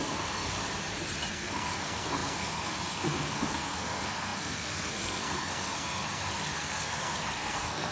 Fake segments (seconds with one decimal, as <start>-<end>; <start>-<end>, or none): 0.0-0.6; 1.3-7.9